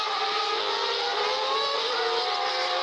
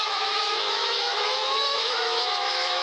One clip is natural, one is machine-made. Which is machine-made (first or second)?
second